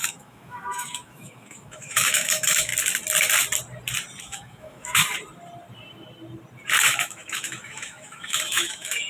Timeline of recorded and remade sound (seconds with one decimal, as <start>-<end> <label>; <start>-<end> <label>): 0.0-2.7 remade; 2.7-4.2 recorded; 4.2-5.0 remade; 5.0-6.8 recorded; 6.8-9.1 remade